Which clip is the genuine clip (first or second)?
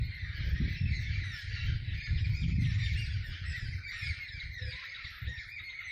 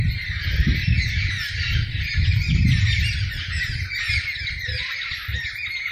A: second